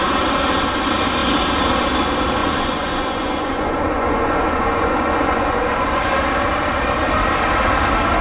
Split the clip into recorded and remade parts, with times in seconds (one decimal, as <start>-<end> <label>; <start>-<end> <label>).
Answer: 0.0-2.4 recorded; 2.4-6.1 remade; 6.1-8.2 recorded